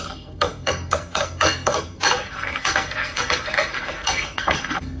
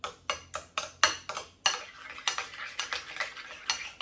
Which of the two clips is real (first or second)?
second